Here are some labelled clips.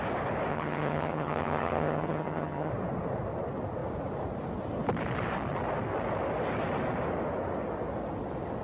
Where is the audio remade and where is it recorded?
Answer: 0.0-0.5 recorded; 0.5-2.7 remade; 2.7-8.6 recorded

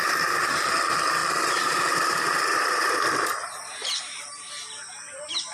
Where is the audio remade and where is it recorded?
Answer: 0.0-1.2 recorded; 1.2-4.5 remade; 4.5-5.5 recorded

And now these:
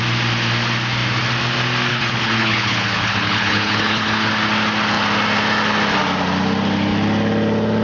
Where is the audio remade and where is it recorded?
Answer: 0.0-1.9 recorded; 1.9-4.3 remade; 4.3-7.8 recorded

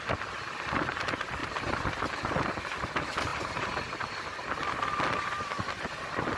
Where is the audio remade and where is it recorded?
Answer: 0.0-1.4 recorded; 1.4-2.6 remade; 2.6-3.3 recorded; 3.3-4.2 remade; 4.2-6.4 recorded

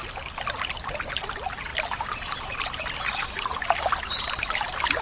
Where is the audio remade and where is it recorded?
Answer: 0.0-5.0 recorded